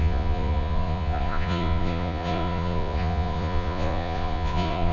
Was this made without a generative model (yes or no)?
no